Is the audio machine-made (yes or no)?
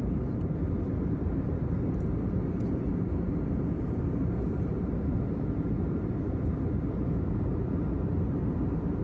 yes